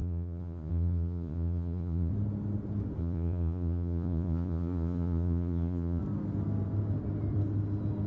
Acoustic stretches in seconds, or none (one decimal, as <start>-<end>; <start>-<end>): 2.1-3.0; 6.0-8.1